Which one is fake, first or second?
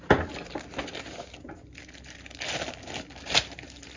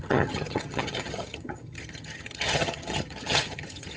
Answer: second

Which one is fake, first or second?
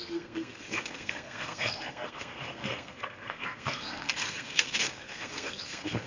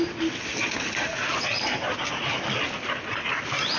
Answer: first